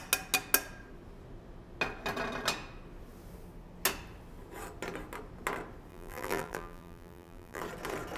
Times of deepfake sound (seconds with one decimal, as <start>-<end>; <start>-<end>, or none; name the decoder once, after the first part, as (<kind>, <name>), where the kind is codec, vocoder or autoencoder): 5.9-7.6 (vocoder, BigVGAN v2)